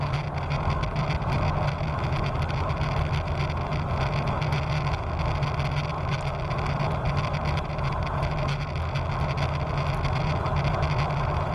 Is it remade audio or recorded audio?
recorded